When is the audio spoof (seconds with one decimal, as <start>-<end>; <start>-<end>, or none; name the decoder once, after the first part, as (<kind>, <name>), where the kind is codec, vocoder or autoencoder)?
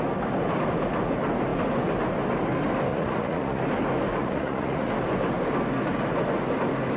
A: 2.9-3.6 (vocoder, Vocos); 4.2-4.9